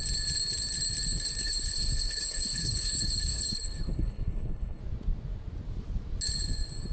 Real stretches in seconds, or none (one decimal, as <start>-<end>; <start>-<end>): 0.0-1.4; 4.8-6.9